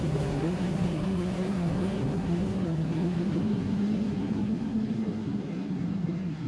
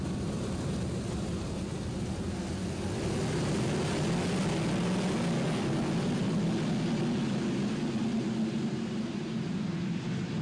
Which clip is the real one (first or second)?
second